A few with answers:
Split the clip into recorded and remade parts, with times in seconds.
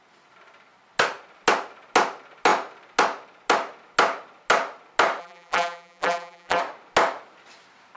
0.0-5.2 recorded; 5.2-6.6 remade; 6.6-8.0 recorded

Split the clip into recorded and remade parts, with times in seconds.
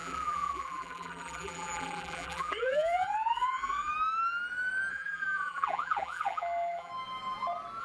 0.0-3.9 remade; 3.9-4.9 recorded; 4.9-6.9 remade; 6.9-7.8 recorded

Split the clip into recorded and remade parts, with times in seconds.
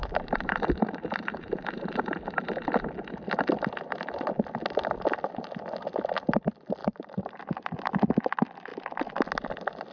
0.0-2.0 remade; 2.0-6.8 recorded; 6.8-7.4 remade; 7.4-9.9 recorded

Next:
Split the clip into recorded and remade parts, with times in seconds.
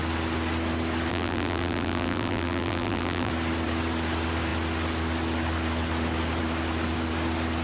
0.0-1.1 recorded; 1.1-3.3 remade; 3.3-7.6 recorded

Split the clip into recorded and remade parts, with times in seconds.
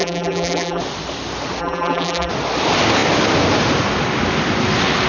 0.0-0.8 remade; 0.8-1.6 recorded; 1.6-2.3 remade; 2.3-5.1 recorded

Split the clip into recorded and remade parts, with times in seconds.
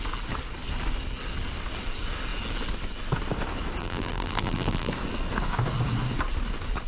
0.0-3.8 recorded; 3.8-4.9 remade; 4.9-6.9 recorded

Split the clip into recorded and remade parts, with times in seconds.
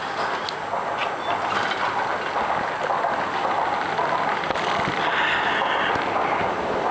0.0-6.9 recorded